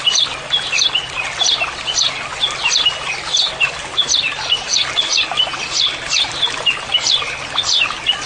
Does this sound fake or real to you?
real